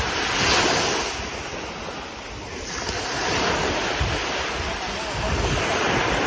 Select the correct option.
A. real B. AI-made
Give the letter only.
A